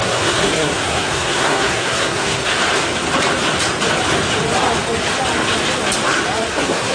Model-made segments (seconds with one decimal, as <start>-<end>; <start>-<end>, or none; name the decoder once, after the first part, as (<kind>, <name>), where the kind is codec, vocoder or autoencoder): 0.0-2.4 (codec, SNAC); 6.5-6.9